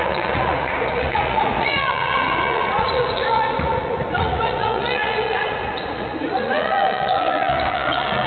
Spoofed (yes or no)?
yes